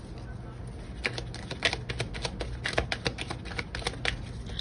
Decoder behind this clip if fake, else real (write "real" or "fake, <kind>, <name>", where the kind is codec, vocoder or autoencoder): real